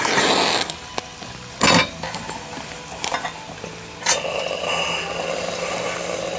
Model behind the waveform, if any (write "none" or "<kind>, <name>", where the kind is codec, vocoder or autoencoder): none